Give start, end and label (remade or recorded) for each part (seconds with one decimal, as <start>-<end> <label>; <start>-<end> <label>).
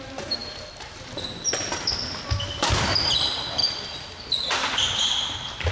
0.0-5.7 recorded